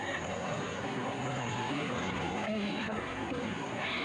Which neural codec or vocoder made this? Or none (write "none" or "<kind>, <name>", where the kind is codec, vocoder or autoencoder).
codec, SNAC